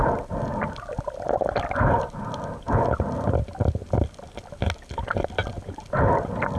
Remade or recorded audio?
recorded